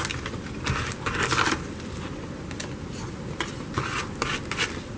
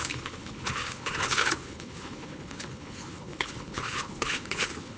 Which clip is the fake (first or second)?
second